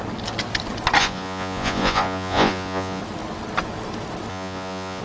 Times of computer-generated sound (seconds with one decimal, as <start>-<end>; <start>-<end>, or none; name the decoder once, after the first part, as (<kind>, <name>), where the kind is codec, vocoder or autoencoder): 1.0-3.0 (vocoder, Vocos); 4.3-5.0